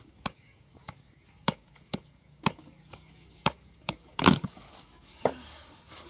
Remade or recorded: remade